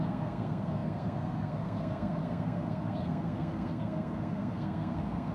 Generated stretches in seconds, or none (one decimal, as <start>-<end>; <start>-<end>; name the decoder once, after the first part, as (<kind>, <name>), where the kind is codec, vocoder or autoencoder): 0.0-5.3 (codec, SNAC)